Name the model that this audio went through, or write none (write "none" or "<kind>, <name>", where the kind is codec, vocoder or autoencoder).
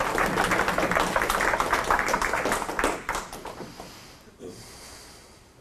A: none